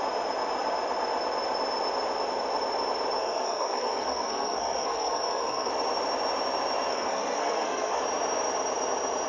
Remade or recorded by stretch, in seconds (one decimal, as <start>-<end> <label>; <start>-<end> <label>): 0.0-3.2 recorded; 3.2-5.7 remade; 5.7-6.9 recorded; 6.9-8.0 remade; 8.0-9.3 recorded